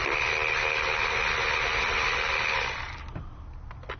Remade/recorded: recorded